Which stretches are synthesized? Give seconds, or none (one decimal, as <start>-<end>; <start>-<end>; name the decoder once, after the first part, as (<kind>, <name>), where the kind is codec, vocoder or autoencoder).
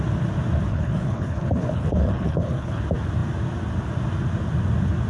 0.7-2.8 (codec, HILCodec)